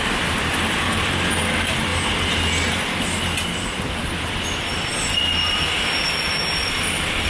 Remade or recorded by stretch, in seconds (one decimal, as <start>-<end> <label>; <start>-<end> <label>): 0.0-1.9 remade; 1.9-4.3 recorded; 4.3-4.9 remade; 4.9-5.6 recorded; 5.6-7.3 remade